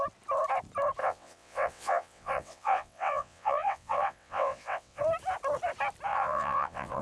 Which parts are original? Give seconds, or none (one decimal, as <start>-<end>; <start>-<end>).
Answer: 0.0-1.0; 5.0-6.1